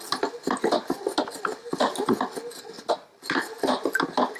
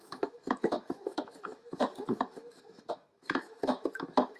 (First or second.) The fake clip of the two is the second